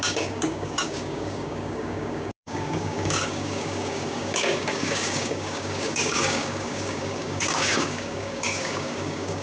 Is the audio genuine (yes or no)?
no